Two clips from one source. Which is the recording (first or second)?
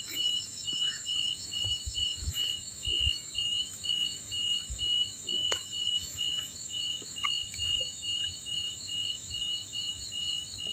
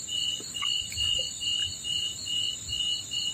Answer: second